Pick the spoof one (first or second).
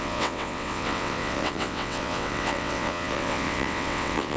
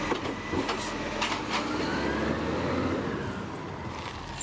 first